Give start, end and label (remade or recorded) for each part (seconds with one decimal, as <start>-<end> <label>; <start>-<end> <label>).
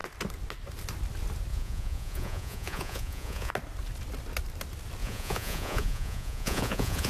0.0-1.5 recorded; 1.5-3.5 remade; 3.5-5.0 recorded; 5.0-7.1 remade